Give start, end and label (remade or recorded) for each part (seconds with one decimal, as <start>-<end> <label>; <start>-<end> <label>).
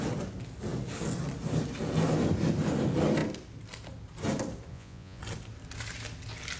0.0-4.7 recorded; 4.7-5.2 remade; 5.2-6.6 recorded